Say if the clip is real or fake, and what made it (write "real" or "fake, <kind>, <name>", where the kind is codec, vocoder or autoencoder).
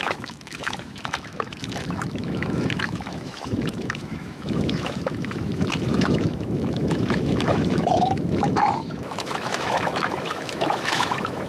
fake, autoencoder, DAC-VAE